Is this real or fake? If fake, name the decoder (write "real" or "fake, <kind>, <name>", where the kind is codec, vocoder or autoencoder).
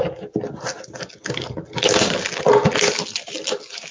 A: real